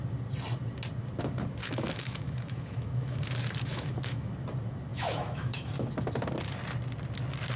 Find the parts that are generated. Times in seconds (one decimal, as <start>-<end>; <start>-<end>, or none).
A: 1.6-3.2; 3.7-4.3; 4.9-5.7